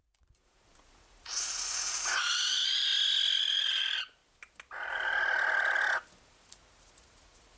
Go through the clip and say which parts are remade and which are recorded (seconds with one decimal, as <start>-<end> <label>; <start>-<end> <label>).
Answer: 0.0-2.9 remade; 2.9-3.4 recorded; 3.4-4.2 remade; 4.2-6.3 recorded; 6.3-7.6 remade